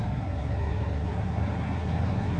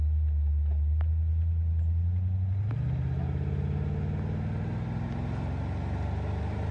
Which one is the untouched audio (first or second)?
second